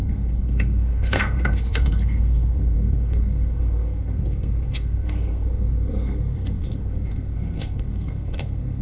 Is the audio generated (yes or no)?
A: yes